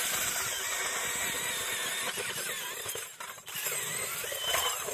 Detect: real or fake real